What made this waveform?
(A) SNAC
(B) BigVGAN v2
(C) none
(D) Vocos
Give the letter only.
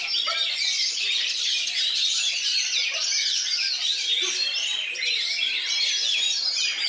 B